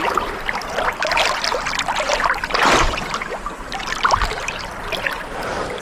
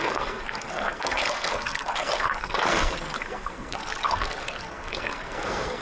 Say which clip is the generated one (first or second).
second